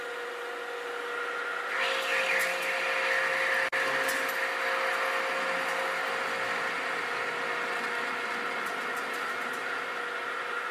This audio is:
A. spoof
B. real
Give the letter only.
B